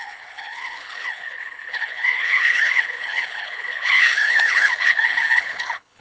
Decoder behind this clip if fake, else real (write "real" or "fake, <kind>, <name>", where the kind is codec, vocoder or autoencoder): fake, codec, HILCodec